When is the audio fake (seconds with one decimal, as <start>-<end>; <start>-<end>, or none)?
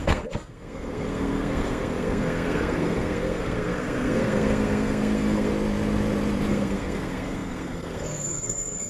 0.0-5.5; 6.5-8.9